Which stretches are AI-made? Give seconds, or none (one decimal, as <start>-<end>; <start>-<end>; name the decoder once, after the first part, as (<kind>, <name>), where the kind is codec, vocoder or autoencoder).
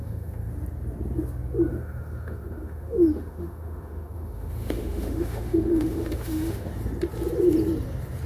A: 0.0-0.5 (autoencoder, DAC-VAE); 1.7-6.7